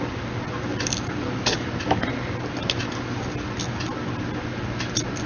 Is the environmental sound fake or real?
real